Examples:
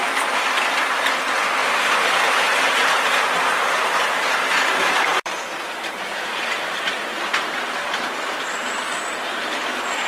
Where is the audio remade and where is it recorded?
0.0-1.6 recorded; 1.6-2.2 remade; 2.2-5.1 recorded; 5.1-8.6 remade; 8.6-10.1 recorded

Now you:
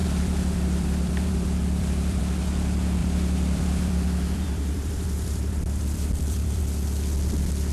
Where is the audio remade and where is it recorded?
0.0-2.2 remade; 2.2-3.0 recorded; 3.0-6.6 remade; 6.6-7.7 recorded

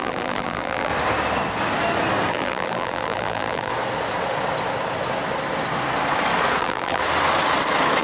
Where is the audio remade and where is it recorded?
0.0-0.9 remade; 0.9-2.3 recorded; 2.3-3.7 remade; 3.7-6.6 recorded; 6.6-7.0 remade; 7.0-8.0 recorded

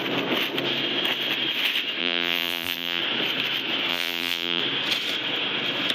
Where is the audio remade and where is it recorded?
0.0-2.0 recorded; 2.0-3.0 remade; 3.0-3.9 recorded; 3.9-4.6 remade; 4.6-5.9 recorded